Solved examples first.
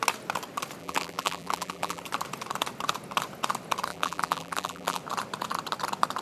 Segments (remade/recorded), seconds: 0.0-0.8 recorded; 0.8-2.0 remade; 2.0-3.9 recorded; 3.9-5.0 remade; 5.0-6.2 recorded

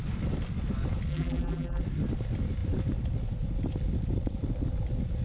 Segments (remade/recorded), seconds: 0.0-1.1 recorded; 1.1-1.8 remade; 1.8-5.2 recorded

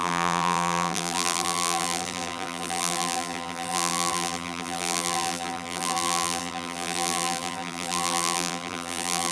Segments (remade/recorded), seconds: 0.0-9.3 remade

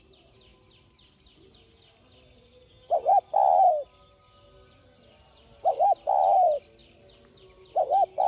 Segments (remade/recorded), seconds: 0.0-8.3 recorded